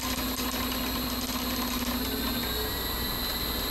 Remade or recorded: recorded